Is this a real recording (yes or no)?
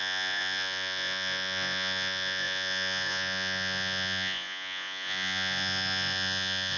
no